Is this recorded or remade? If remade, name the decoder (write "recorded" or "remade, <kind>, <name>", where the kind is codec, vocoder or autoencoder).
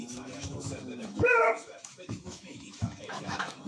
remade, autoencoder, DAC-VAE